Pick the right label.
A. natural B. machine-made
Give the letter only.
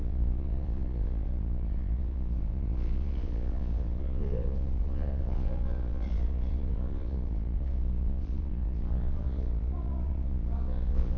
B